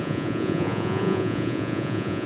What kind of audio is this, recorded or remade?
remade